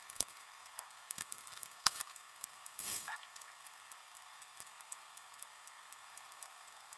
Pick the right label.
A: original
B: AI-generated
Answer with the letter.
B